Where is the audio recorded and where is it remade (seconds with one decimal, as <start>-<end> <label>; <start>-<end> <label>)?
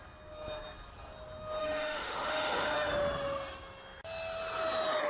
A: 0.0-1.6 recorded; 1.6-2.9 remade; 2.9-5.1 recorded